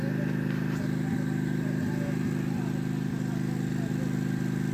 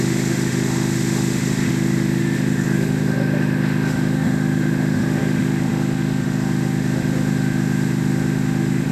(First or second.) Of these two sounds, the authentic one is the first